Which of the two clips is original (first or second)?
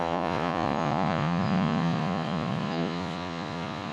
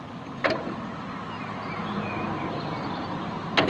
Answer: second